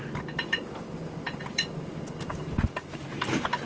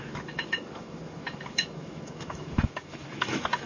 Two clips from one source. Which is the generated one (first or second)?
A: second